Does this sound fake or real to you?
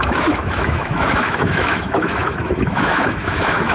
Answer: fake